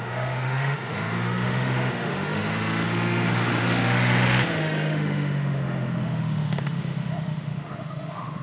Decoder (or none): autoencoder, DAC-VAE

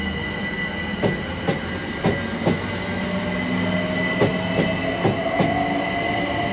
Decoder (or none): none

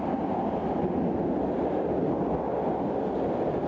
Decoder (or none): none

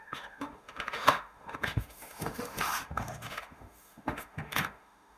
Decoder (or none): autoencoder, DAC-VAE